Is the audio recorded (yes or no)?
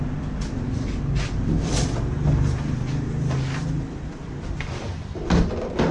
yes